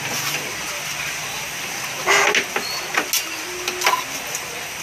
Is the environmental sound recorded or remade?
recorded